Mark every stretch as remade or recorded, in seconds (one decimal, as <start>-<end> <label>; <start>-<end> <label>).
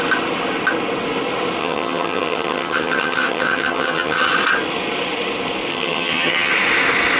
0.0-1.6 recorded; 1.6-4.3 remade; 4.3-5.7 recorded; 5.7-6.5 remade; 6.5-7.2 recorded